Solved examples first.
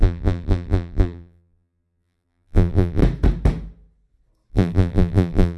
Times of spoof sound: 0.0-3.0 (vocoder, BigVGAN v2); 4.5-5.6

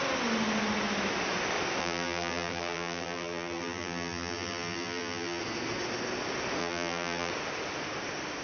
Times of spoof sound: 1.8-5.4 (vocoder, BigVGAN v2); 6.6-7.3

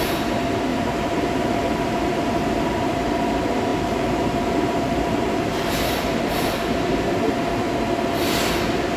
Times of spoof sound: 0.7-3.3 (vocoder, BigVGAN v2); 3.7-7.5